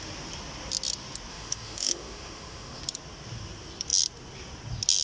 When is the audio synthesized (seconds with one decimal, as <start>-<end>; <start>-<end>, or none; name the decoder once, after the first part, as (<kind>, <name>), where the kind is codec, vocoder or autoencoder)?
1.3-2.8 (autoencoder, DAC-VAE)